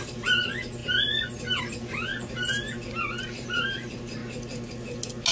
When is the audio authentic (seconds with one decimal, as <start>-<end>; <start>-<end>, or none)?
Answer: 0.8-1.6; 2.1-3.2; 4.2-5.3